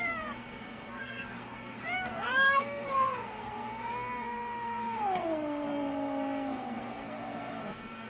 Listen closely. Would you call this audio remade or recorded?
remade